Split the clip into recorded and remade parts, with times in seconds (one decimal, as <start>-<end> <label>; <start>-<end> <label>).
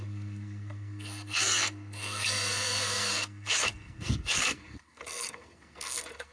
0.0-6.3 remade